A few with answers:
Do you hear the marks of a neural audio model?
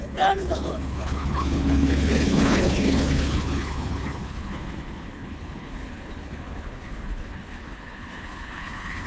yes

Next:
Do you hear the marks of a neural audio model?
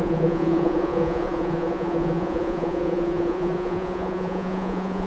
yes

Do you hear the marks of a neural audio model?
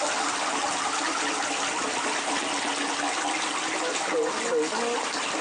no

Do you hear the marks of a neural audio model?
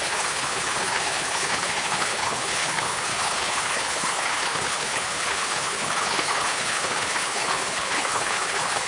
yes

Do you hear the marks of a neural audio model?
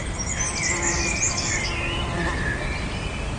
no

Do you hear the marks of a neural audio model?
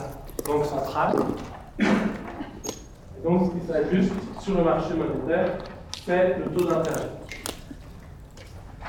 no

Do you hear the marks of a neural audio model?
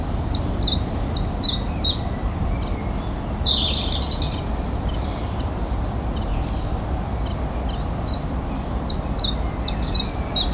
no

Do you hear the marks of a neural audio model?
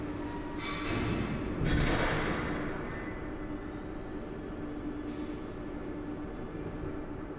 no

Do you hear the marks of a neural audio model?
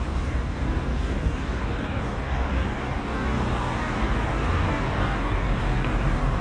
yes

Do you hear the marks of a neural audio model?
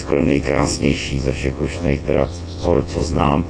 yes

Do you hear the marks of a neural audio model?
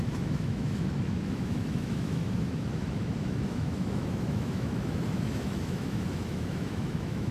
yes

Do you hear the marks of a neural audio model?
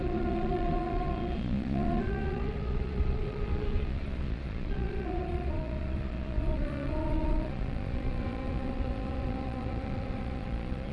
yes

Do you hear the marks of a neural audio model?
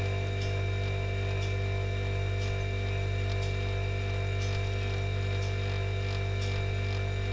no